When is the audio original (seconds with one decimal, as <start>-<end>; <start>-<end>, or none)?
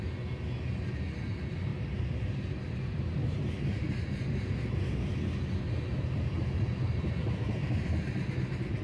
0.0-1.7; 2.4-3.2; 4.5-8.8